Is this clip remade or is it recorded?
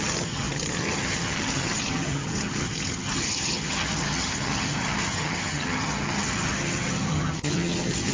remade